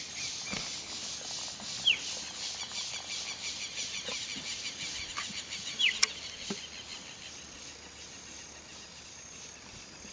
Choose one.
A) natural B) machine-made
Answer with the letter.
A